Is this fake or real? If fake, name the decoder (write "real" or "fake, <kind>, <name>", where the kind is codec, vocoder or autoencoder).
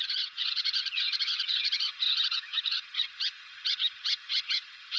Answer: fake, vocoder, HiFi-GAN